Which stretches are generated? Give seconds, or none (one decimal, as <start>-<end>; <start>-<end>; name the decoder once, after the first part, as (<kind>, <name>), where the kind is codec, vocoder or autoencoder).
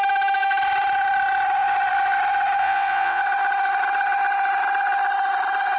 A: 2.6-3.2 (vocoder, Vocos)